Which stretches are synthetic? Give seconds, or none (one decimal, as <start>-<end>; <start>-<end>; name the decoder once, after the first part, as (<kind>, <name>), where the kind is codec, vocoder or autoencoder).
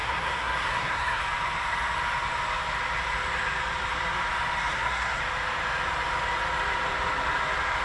0.0-1.2 (codec, SNAC); 4.7-5.2